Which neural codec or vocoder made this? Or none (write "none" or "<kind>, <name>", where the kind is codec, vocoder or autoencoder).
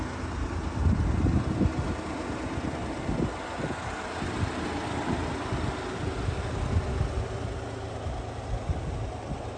none